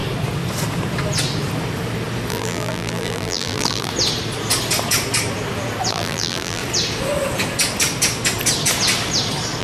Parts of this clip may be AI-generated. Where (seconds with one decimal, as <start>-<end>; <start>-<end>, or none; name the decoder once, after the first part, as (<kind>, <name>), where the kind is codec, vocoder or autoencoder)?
2.3-3.9 (vocoder, BigVGAN v2); 5.9-6.6